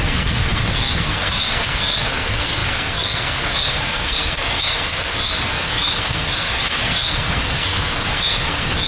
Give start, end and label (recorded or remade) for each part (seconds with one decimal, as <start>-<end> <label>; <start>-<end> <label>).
0.0-8.9 remade